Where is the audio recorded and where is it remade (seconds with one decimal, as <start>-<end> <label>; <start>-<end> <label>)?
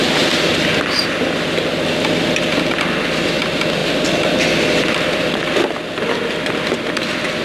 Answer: 0.0-0.5 remade; 0.5-3.8 recorded; 3.8-5.7 remade; 5.7-7.4 recorded